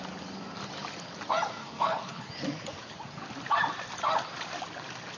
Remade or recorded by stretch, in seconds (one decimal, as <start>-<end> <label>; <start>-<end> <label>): 0.0-1.6 recorded; 1.6-2.3 remade; 2.3-5.2 recorded